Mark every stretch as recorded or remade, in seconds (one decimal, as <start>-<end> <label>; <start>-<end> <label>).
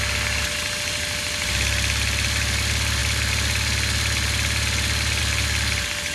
0.0-6.1 recorded